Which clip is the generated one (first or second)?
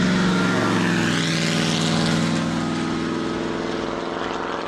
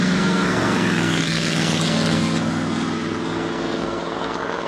second